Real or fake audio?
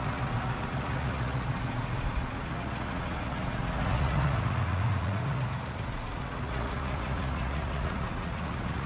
fake